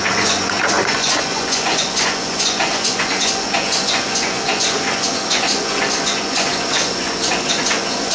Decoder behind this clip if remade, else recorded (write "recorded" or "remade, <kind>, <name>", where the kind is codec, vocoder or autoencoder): remade, vocoder, Vocos